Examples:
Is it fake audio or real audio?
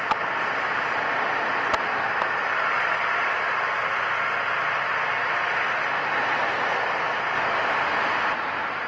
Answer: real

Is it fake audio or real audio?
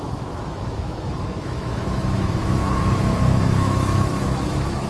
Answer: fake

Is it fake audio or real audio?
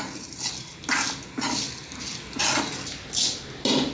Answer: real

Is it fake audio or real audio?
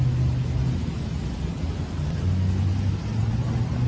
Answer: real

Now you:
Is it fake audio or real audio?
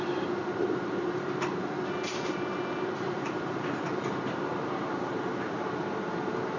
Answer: fake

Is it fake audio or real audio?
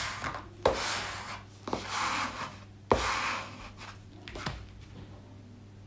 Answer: real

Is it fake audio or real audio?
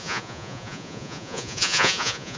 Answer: fake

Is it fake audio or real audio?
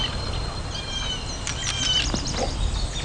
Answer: real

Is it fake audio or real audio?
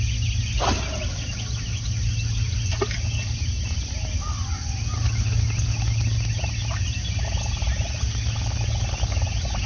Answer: real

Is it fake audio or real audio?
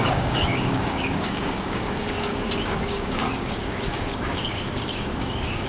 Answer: fake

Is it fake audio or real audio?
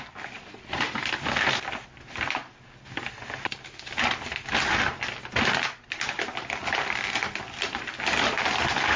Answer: real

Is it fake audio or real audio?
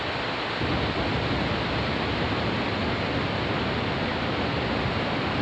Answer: real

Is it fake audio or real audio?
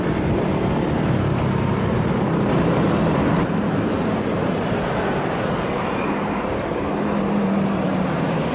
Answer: fake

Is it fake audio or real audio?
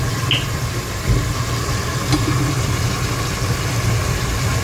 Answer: real